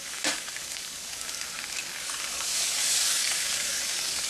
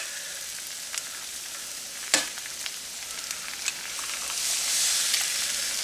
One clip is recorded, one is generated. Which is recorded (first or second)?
second